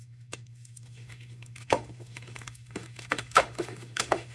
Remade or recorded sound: remade